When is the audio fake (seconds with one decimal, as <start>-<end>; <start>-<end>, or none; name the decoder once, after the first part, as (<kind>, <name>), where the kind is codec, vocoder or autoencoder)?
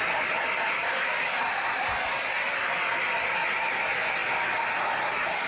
none